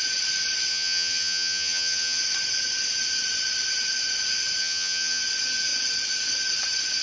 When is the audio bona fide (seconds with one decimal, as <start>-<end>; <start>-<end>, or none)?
0.0-0.7; 2.2-4.6; 5.2-7.0